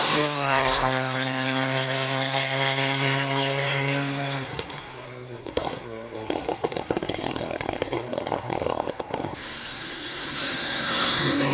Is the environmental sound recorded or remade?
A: remade